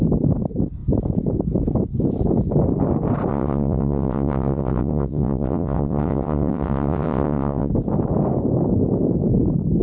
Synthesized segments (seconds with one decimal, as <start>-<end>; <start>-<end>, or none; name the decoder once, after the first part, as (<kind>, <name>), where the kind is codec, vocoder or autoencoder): 3.3-7.7 (vocoder, WaveNeXt)